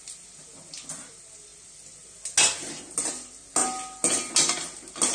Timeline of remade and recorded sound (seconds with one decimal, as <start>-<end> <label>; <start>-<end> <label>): 0.0-5.1 recorded